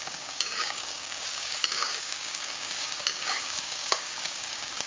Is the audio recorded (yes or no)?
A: no